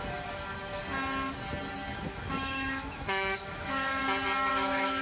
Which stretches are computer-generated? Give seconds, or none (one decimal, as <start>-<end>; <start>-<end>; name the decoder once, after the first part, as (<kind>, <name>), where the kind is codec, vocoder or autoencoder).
0.0-0.8 (autoencoder, DAC-VAE); 1.9-4.0; 4.5-5.0